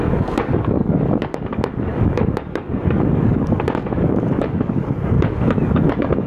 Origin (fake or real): fake